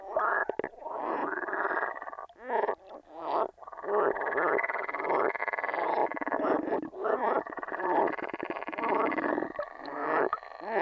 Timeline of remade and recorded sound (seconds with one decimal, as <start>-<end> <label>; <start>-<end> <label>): 0.0-6.0 recorded; 6.0-10.4 remade; 10.4-10.8 recorded